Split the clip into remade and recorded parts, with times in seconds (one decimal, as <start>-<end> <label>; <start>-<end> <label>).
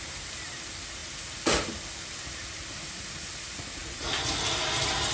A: 0.0-5.1 recorded